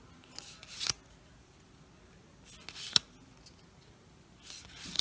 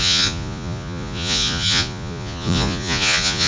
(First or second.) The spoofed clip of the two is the second